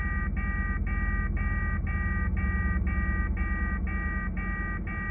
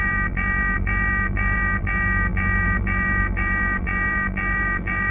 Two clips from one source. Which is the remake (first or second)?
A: second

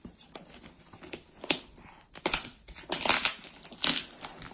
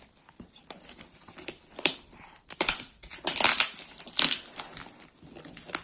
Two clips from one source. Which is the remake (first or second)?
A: second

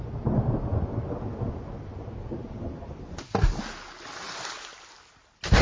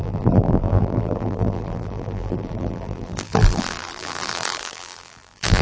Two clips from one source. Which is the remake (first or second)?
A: second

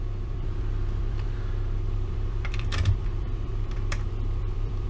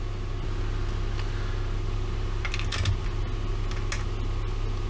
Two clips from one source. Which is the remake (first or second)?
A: first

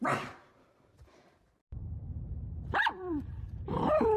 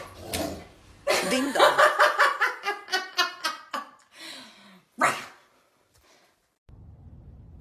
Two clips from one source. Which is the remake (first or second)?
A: first